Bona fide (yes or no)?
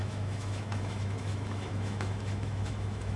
no